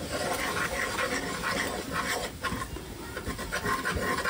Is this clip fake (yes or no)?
no